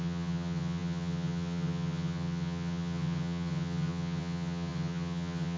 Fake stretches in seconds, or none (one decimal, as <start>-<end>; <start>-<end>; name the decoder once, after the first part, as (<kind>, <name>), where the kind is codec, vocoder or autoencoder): 0.0-5.6 (vocoder, HiFi-GAN)